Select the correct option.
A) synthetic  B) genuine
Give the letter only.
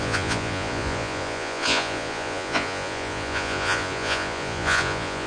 A